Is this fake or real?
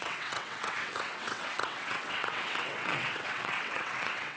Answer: fake